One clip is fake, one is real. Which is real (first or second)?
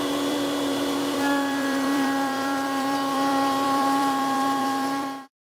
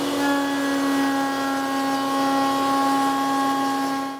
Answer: second